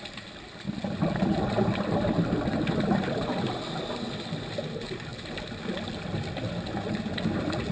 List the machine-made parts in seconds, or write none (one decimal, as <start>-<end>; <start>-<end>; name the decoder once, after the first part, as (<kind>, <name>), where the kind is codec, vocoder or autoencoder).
none